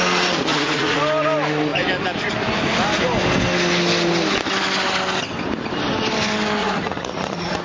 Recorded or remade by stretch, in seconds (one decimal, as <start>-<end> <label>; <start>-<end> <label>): 0.0-0.5 recorded; 0.5-1.0 remade; 1.0-6.6 recorded; 6.6-7.6 remade